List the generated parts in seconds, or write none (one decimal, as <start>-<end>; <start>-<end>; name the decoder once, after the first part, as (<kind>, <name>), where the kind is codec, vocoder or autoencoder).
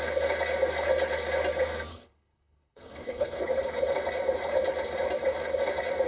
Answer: 1.9-3.4 (codec, HILCodec)